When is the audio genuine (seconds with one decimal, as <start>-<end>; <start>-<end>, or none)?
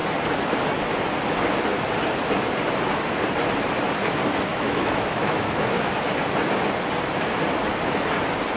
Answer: 0.0-4.5; 5.9-8.6